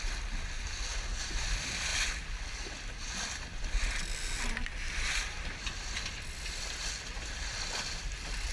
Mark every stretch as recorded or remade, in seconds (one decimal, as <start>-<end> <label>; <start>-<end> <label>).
0.0-8.5 recorded